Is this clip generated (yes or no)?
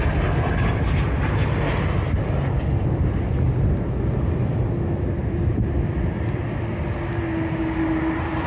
no